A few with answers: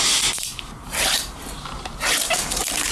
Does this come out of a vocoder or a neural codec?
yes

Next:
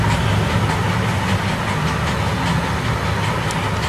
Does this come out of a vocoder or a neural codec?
no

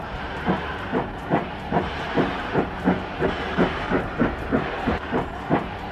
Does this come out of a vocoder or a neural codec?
yes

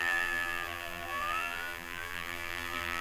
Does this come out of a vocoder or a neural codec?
yes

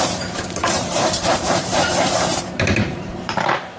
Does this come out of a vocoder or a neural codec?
yes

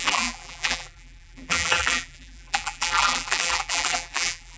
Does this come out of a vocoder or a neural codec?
yes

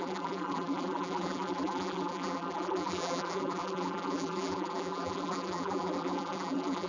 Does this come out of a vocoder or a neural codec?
yes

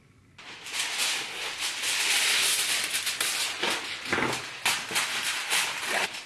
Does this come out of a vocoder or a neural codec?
no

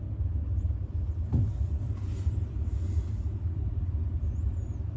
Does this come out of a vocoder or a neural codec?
yes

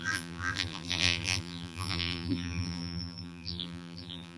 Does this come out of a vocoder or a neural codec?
yes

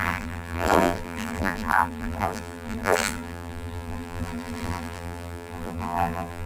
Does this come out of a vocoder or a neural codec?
yes